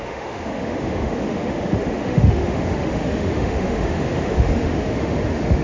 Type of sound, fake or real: fake